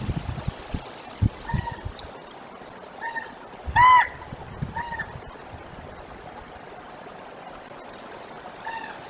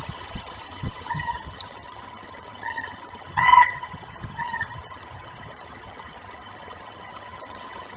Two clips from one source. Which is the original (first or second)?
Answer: first